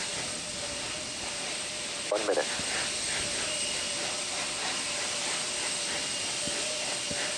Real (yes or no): yes